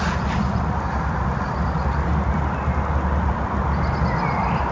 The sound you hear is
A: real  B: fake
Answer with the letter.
A